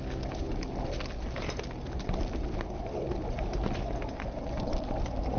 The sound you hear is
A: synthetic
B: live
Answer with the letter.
B